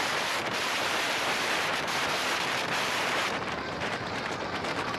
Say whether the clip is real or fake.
fake